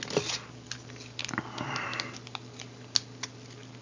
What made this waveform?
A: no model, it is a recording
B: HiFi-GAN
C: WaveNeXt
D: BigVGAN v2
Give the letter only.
A